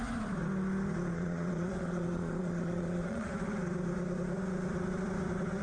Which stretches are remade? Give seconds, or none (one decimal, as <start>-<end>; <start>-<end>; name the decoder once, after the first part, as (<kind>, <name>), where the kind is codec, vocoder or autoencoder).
1.1-3.3 (vocoder, Vocos)